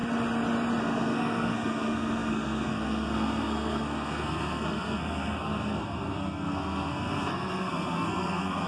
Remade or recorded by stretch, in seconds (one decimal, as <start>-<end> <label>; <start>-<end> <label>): 0.0-0.8 recorded; 0.8-8.7 remade